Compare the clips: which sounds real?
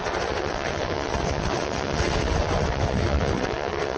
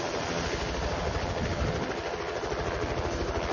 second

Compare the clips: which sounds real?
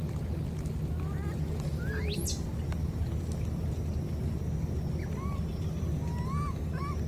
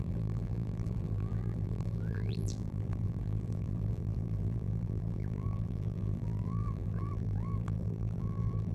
first